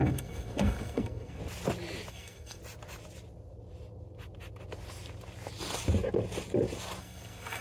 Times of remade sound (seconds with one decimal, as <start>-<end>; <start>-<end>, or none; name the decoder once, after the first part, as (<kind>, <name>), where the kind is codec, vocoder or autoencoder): 0.0-1.4 (codec, SNAC); 2.1-2.6; 7.0-7.6